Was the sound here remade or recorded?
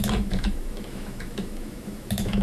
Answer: remade